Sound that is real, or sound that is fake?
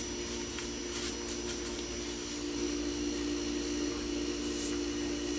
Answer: real